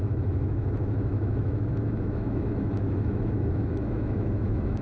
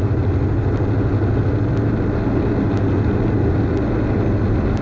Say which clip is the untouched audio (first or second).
second